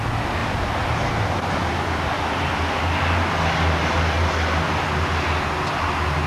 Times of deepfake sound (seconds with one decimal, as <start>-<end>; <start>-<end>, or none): none